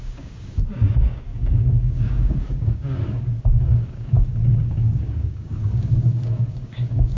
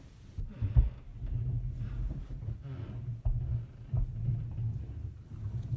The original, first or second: second